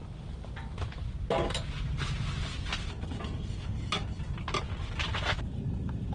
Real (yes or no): yes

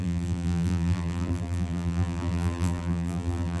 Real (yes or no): no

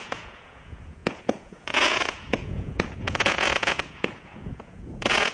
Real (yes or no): no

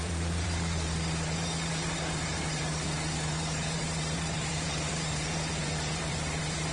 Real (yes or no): no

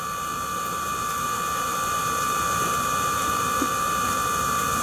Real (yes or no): no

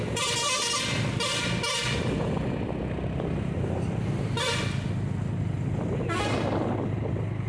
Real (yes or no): yes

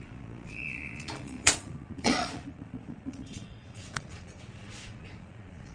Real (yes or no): no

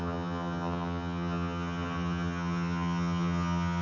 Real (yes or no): no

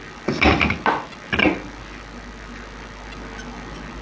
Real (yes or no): yes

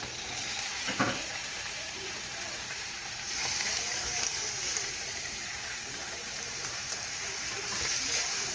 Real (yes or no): no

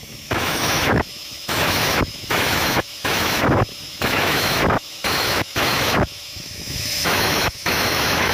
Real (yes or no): no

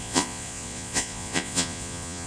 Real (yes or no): no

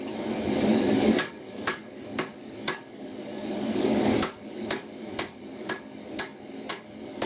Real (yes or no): no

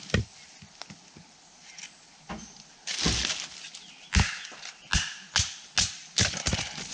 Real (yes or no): yes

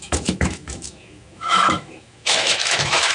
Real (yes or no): no